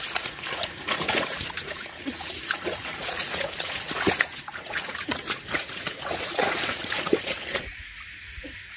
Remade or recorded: remade